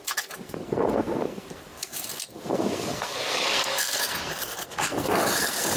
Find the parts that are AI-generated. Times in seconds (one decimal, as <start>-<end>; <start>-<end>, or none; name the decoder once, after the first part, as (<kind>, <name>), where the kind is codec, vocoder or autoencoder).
0.0-5.8 (codec, SNAC)